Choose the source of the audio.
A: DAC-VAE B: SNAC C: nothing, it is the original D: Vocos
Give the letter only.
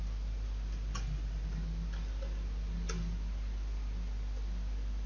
C